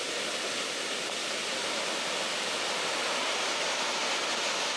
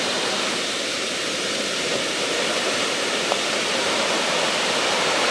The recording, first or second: first